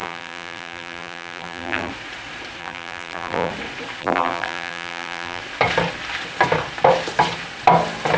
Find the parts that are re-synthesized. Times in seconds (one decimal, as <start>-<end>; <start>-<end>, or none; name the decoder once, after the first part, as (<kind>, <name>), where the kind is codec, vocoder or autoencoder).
0.0-1.9 (vocoder, BigVGAN v2); 2.6-3.5; 4.0-5.4